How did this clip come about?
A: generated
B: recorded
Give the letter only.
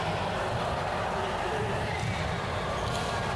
B